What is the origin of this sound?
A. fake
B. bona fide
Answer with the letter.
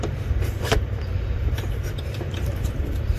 A